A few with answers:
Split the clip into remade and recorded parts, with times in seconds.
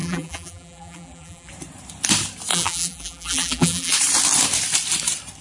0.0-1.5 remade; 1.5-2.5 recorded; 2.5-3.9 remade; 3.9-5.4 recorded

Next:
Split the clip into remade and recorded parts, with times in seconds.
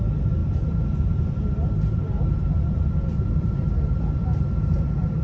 0.0-0.4 recorded; 0.4-3.5 remade; 3.5-5.2 recorded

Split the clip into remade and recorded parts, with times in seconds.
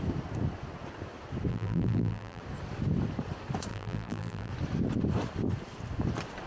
0.0-1.5 recorded; 1.5-2.4 remade; 2.4-3.7 recorded; 3.7-4.5 remade; 4.5-6.5 recorded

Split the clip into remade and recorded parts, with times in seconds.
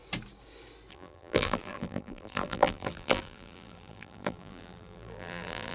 0.0-0.9 recorded; 0.9-5.7 remade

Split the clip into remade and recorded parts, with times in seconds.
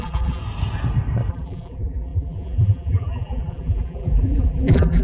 0.0-0.4 remade; 0.4-1.3 recorded; 1.3-5.0 remade